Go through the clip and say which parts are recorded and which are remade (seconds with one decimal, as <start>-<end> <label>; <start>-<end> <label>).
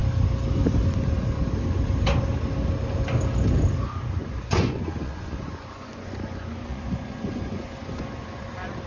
0.0-4.2 recorded; 4.2-8.5 remade; 8.5-8.9 recorded